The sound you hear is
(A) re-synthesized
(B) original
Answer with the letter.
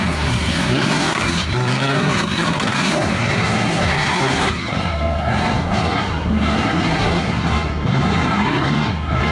A